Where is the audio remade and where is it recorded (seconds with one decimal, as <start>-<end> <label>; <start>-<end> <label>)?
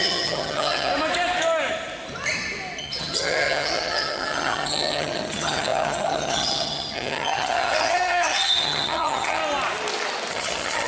0.0-0.9 remade; 0.9-2.8 recorded; 2.8-9.4 remade; 9.4-10.3 recorded; 10.3-10.9 remade